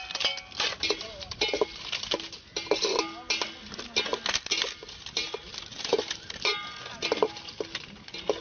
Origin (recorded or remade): recorded